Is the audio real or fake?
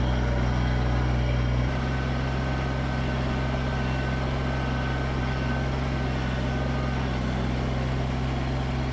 real